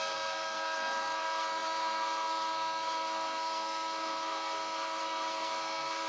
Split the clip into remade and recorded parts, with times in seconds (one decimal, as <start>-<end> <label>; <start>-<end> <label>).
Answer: 0.0-6.1 remade